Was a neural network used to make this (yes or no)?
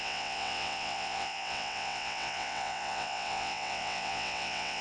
yes